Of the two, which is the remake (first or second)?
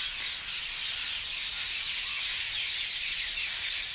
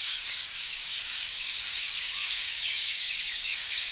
second